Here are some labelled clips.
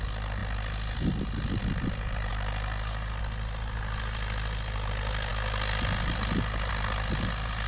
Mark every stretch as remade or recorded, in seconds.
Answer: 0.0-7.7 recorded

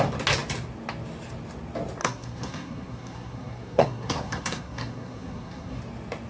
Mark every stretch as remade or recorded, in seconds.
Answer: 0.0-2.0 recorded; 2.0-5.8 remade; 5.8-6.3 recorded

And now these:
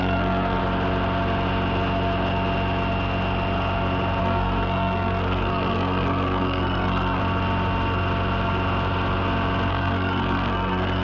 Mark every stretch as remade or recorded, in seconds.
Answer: 0.0-0.6 remade; 0.6-4.2 recorded; 4.2-7.2 remade; 7.2-9.7 recorded; 9.7-11.0 remade

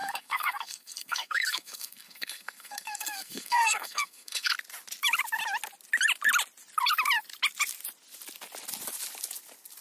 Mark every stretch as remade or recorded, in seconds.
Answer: 0.0-4.5 remade; 4.5-9.8 recorded